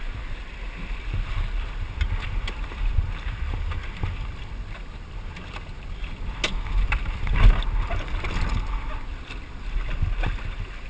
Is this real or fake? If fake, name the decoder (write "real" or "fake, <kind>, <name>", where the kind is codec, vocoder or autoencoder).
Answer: real